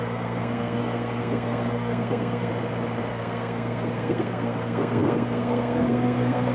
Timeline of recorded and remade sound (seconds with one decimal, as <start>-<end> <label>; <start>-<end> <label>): 0.0-2.5 remade; 2.5-3.1 recorded; 3.1-6.5 remade